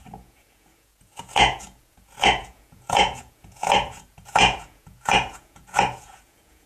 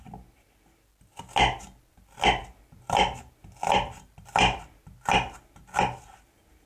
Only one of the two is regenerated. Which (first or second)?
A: first